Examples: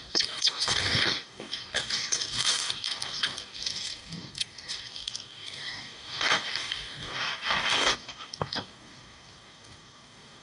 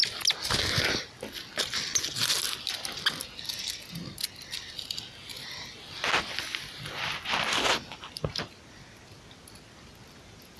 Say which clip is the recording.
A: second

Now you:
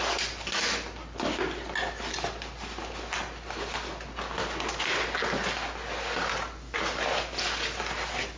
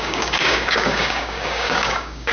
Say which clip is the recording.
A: first